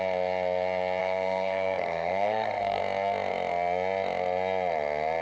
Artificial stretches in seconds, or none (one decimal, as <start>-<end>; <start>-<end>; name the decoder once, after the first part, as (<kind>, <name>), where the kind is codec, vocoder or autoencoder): 1.0-2.8 (codec, SNAC)